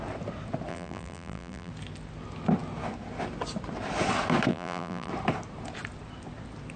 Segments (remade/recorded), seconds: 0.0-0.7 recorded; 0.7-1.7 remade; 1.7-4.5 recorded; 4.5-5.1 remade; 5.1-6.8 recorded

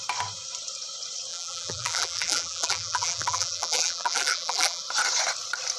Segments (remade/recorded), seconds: 0.0-1.3 recorded; 1.3-4.8 remade; 4.8-5.8 recorded

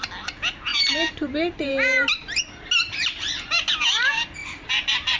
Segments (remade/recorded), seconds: 0.0-0.7 recorded; 0.7-2.4 remade; 2.4-4.4 recorded; 4.4-5.2 remade